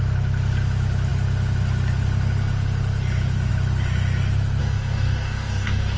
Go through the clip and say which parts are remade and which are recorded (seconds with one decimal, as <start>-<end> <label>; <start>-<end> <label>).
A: 0.0-4.6 recorded; 4.6-6.0 remade